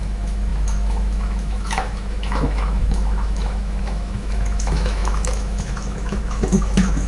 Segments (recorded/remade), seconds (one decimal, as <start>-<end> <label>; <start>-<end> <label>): 0.0-7.1 remade